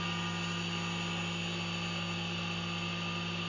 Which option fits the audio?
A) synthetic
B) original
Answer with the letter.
B